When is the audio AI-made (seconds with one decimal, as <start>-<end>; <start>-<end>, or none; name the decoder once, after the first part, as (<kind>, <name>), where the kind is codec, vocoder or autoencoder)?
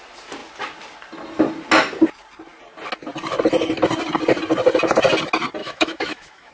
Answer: 5.6-6.5 (autoencoder, DAC-VAE)